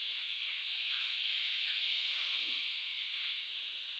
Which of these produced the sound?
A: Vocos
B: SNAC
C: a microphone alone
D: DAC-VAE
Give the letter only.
D